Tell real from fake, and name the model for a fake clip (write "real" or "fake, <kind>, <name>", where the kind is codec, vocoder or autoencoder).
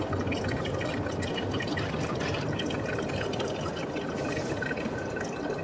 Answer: real